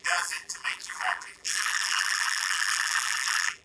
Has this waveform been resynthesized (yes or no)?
yes